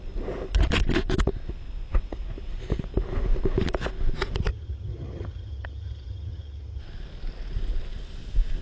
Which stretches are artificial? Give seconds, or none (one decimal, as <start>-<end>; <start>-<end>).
4.5-6.8